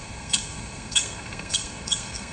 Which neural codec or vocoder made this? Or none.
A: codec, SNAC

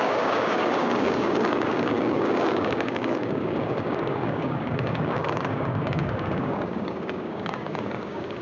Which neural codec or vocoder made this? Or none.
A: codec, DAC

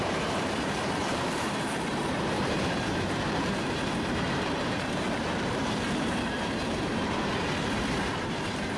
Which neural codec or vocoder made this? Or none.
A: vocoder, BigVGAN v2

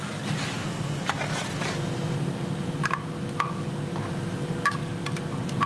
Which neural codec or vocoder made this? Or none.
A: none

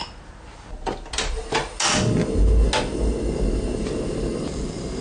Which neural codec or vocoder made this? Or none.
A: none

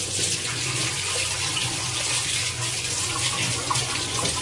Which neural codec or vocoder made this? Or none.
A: vocoder, Vocos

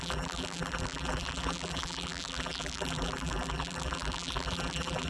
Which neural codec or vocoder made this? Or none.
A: vocoder, BigVGAN v2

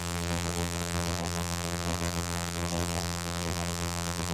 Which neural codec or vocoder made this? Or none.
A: vocoder, BigVGAN v2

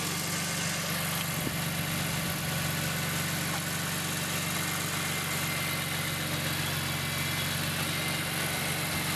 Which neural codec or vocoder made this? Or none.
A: none